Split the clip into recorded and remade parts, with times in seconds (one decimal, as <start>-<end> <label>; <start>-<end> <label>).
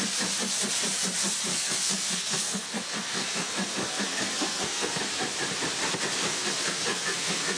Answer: 0.0-1.5 recorded; 1.5-5.0 remade; 5.0-6.3 recorded; 6.3-7.6 remade